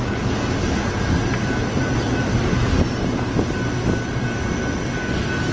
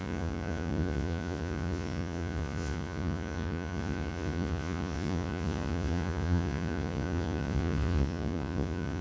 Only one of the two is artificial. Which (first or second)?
second